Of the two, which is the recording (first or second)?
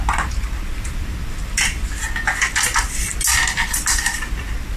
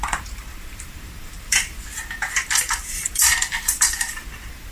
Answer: first